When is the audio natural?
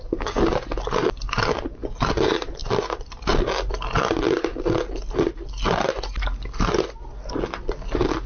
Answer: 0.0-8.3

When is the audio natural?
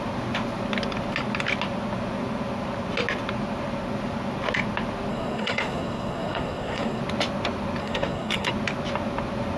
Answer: 0.0-5.1; 7.0-7.8; 8.5-9.6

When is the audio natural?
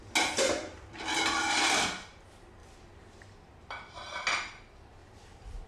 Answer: 0.0-2.6; 4.2-5.0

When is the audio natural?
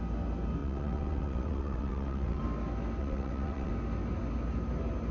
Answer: 0.0-0.6; 2.4-3.0; 3.7-5.1